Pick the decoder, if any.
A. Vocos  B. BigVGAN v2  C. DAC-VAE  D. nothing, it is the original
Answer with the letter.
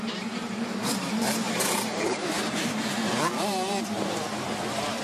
B